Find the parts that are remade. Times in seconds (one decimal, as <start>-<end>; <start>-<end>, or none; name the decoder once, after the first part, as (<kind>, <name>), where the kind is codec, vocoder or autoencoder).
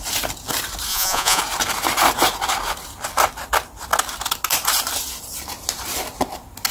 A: 0.9-1.4 (vocoder, Vocos)